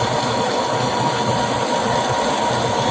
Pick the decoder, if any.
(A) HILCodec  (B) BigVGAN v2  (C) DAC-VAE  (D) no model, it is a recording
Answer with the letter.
D